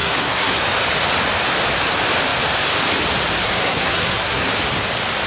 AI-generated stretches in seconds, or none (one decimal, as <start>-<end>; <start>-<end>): 0.0-0.6; 3.4-4.5